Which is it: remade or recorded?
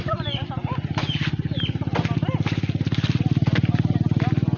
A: recorded